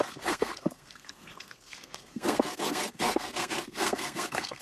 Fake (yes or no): yes